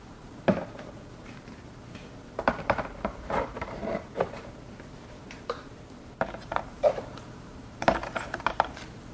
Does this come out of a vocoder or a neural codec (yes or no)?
yes